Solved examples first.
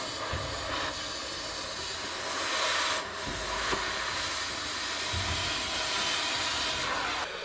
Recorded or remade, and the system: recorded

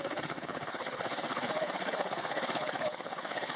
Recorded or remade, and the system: remade, codec, HILCodec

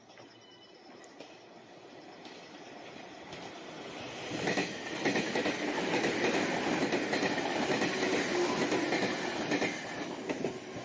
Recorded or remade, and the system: recorded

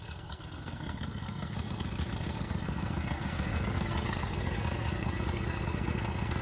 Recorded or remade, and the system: remade, codec, SNAC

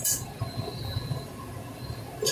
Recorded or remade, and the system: remade, vocoder, BigVGAN v2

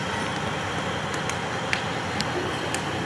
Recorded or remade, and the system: recorded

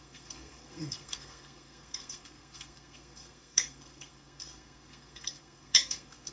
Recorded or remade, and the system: remade, codec, SNAC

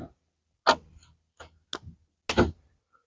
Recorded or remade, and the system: recorded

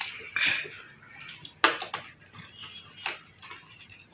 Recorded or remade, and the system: recorded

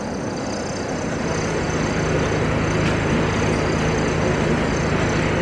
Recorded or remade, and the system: recorded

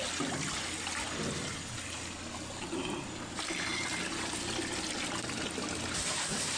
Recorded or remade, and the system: recorded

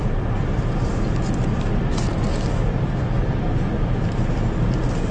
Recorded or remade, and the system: recorded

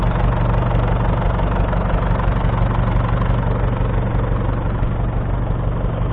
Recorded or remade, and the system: recorded